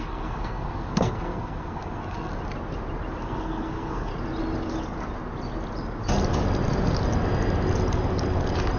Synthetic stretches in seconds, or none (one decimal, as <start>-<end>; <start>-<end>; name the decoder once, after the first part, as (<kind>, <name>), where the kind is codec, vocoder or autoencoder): 0.0-2.3 (codec, SNAC); 3.2-4.1